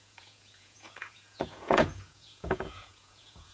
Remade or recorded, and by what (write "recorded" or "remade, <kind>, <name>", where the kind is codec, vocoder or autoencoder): remade, vocoder, Vocos